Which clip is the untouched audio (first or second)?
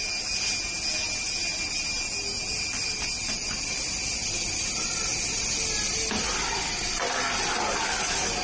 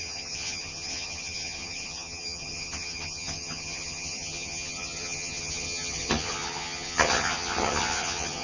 first